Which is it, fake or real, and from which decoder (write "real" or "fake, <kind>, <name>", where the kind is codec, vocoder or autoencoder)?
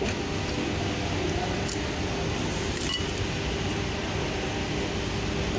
real